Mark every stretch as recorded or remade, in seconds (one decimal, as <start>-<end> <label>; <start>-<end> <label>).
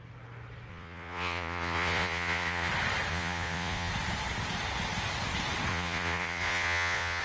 0.0-0.7 recorded; 0.7-2.7 remade; 2.7-3.1 recorded; 3.1-3.9 remade; 3.9-5.7 recorded; 5.7-7.2 remade